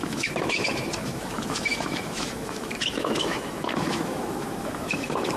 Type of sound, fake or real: fake